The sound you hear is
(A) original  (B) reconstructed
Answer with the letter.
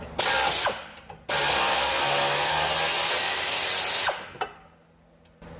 A